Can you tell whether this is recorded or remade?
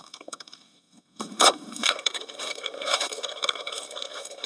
remade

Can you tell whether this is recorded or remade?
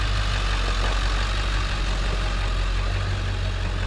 recorded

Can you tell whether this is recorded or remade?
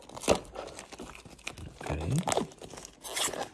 recorded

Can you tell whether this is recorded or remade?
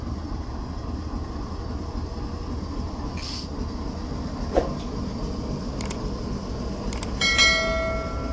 recorded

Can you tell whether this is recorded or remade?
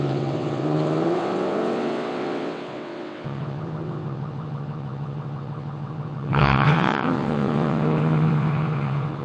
remade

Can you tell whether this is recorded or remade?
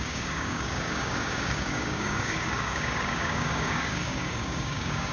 remade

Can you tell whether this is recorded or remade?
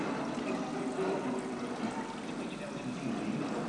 recorded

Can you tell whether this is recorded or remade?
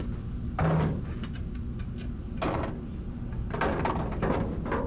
recorded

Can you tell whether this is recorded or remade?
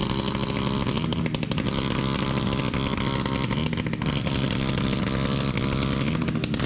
recorded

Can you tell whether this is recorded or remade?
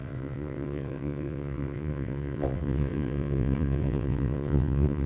remade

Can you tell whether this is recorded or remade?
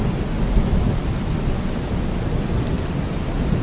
recorded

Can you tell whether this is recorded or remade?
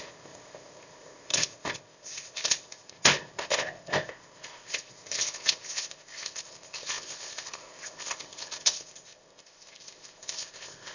remade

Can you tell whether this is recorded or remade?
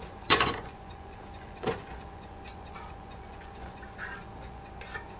remade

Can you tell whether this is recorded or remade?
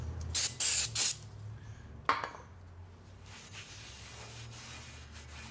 recorded